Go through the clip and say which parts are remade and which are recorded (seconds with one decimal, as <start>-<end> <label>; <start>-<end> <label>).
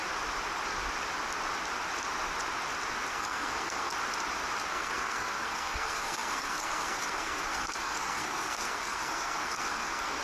0.0-3.1 recorded; 3.1-3.9 remade; 3.9-4.7 recorded; 4.7-10.2 remade